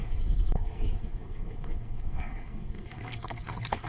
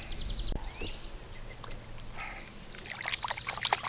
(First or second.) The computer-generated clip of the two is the first